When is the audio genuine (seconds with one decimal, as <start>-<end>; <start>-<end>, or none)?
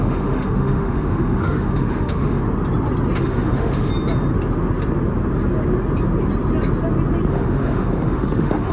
2.4-3.2; 3.9-7.3